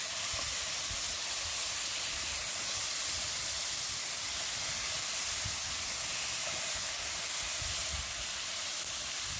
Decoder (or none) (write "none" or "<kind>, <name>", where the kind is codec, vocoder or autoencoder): none